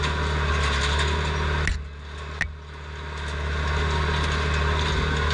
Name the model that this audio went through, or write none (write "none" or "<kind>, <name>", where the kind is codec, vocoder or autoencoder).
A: none